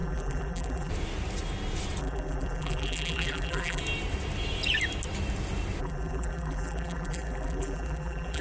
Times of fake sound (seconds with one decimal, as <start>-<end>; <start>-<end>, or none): 0.0-0.9; 2.0-3.8; 5.8-8.4